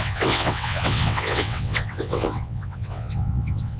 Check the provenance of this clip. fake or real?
fake